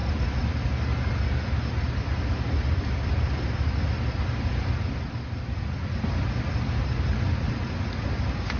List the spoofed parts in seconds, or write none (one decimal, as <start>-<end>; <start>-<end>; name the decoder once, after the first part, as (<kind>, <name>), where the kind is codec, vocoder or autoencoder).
none